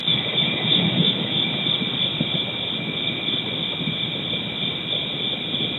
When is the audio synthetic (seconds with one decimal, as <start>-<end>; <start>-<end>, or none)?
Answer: 0.0-1.7